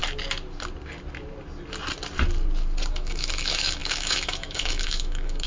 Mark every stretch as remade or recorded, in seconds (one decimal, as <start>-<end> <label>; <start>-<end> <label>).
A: 0.0-2.9 recorded; 2.9-5.5 remade

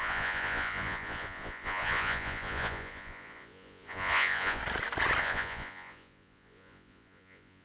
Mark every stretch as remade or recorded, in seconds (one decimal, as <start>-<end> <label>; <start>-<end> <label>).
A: 0.0-4.6 remade; 4.6-5.2 recorded; 5.2-7.6 remade

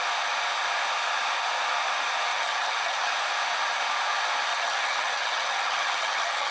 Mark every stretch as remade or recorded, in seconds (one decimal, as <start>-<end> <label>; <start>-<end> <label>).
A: 0.0-2.3 recorded; 2.3-3.1 remade; 3.1-4.5 recorded; 4.5-6.5 remade

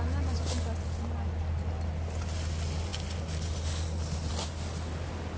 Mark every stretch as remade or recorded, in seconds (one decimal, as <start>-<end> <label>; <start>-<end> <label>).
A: 0.0-5.4 recorded

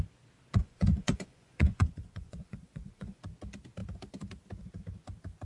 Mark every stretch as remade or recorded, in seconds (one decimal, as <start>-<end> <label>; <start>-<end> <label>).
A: 0.0-0.6 recorded; 0.6-3.2 remade; 3.2-5.4 recorded

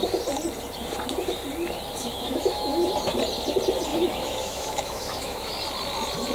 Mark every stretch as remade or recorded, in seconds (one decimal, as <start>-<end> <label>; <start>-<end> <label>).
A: 0.0-2.0 recorded; 2.0-2.9 remade; 2.9-3.9 recorded; 3.9-5.5 remade; 5.5-6.3 recorded

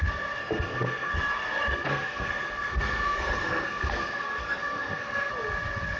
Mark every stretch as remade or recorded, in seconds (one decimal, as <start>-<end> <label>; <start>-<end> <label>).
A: 0.0-0.4 recorded; 0.4-1.1 remade; 1.1-1.7 recorded; 1.7-5.3 remade; 5.3-6.0 recorded